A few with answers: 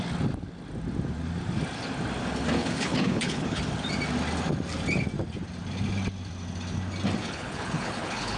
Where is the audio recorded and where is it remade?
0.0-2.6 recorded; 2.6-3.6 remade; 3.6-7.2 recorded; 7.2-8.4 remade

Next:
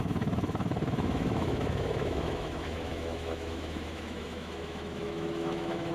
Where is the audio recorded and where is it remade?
0.0-5.9 remade